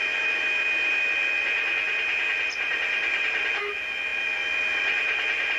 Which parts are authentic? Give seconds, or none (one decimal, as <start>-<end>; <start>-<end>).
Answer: 0.0-2.7; 3.6-5.6